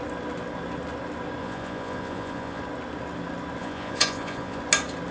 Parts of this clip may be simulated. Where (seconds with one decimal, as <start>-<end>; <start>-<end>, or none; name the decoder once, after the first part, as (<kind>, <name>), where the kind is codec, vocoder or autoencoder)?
1.4-2.6 (vocoder, Vocos); 3.6-4.6